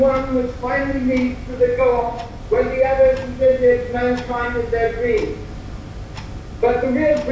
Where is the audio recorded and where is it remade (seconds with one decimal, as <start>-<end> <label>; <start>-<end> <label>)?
0.0-1.9 recorded; 1.9-2.4 remade; 2.4-7.3 recorded